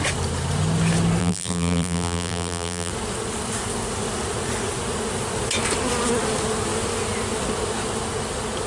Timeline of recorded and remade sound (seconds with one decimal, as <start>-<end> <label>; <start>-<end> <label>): 0.0-1.2 recorded; 1.2-2.9 remade; 2.9-8.7 recorded